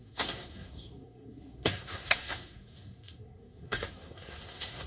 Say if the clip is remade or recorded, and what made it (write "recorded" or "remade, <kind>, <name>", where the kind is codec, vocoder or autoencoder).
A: remade, codec, SNAC